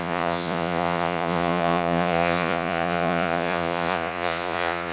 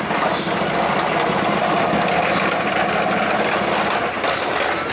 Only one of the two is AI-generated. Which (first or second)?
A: first